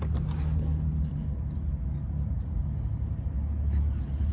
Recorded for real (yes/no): yes